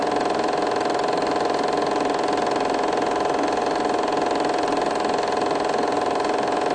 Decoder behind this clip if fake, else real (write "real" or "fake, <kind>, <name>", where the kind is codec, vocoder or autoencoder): real